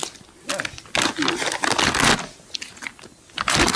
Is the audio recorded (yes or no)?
yes